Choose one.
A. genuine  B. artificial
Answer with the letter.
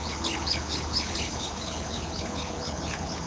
B